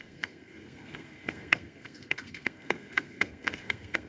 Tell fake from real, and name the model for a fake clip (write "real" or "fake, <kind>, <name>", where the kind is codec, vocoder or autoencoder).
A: fake, codec, SNAC